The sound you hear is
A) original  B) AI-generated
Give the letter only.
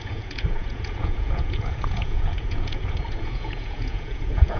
B